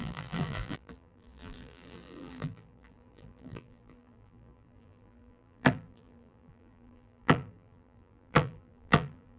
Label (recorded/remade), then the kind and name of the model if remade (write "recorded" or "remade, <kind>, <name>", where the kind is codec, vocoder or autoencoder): remade, vocoder, BigVGAN v2